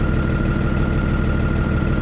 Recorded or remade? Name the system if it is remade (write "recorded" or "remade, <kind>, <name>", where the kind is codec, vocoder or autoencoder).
recorded